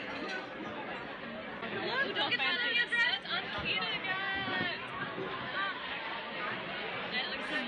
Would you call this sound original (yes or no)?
yes